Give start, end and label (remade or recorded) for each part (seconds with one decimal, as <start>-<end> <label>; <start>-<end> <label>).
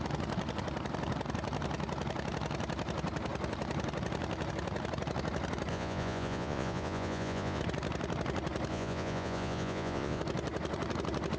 0.0-5.7 recorded; 5.7-7.6 remade; 7.6-8.7 recorded; 8.7-10.2 remade; 10.2-11.4 recorded